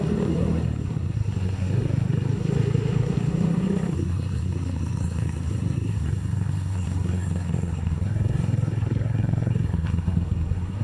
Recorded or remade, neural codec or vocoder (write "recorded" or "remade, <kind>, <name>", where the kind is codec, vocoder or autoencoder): remade, codec, SNAC